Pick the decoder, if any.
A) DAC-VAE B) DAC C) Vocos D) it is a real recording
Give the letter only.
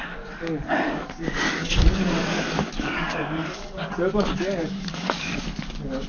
B